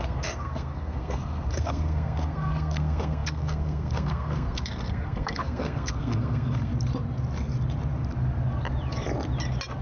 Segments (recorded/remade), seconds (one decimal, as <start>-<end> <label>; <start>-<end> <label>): 0.0-6.7 remade; 6.7-9.8 recorded